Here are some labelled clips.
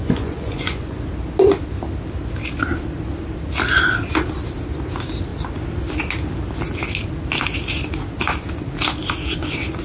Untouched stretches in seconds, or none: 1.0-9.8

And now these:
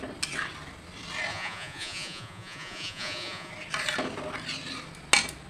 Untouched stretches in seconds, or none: 0.0-1.3; 3.5-5.5

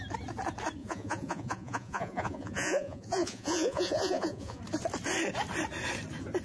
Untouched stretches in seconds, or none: 0.0-0.8; 4.6-6.4

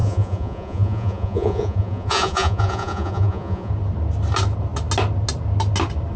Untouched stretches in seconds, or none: 3.7-6.2

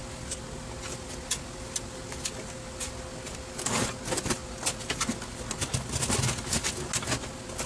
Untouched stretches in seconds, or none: 0.0-7.7